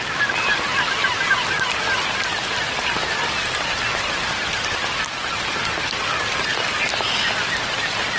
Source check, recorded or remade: recorded